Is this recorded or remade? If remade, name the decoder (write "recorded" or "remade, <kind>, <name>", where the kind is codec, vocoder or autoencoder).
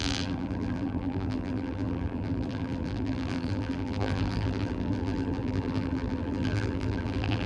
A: remade, vocoder, BigVGAN v2